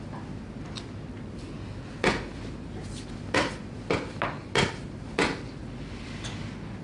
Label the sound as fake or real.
real